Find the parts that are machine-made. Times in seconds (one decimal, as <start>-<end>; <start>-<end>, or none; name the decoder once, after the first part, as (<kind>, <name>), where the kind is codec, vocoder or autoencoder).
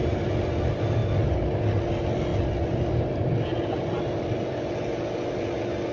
none